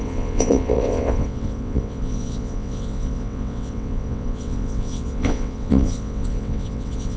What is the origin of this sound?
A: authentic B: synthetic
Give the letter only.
B